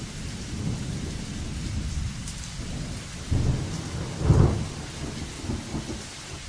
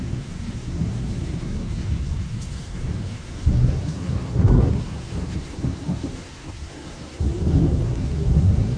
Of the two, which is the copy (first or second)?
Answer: second